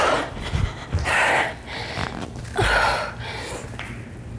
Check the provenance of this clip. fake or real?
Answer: real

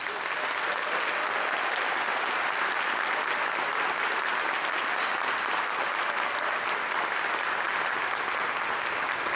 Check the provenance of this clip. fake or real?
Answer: real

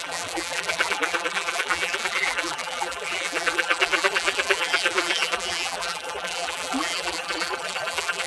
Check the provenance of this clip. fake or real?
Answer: fake